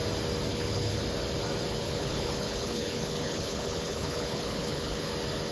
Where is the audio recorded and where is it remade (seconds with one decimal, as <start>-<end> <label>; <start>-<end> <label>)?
0.0-0.5 recorded; 0.5-1.0 remade; 1.0-1.8 recorded; 1.8-5.1 remade; 5.1-5.5 recorded